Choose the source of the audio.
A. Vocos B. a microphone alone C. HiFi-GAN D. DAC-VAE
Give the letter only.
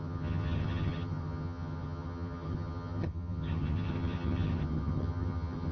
C